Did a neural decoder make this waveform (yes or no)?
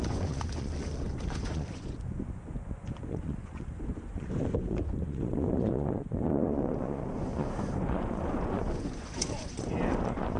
yes